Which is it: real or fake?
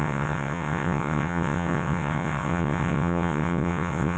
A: fake